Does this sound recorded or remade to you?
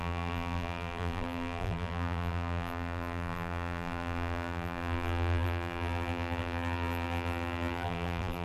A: remade